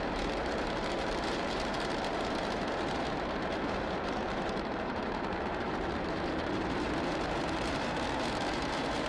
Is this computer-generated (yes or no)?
yes